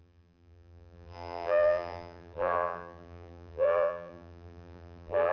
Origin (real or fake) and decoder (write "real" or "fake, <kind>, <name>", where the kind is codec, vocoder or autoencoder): fake, vocoder, BigVGAN v2